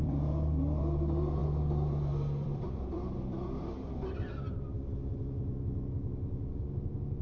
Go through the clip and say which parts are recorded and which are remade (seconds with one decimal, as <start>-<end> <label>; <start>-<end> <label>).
0.0-0.8 remade; 0.8-1.4 recorded; 1.4-3.7 remade; 3.7-7.2 recorded